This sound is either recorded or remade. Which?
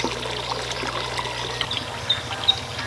recorded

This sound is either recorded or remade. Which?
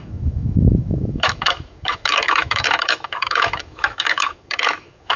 remade